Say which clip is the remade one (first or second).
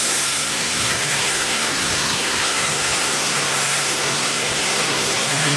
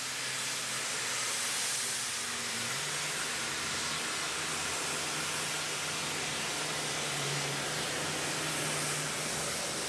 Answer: first